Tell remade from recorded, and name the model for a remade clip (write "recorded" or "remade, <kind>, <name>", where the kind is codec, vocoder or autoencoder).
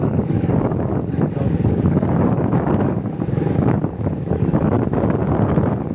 remade, codec, DAC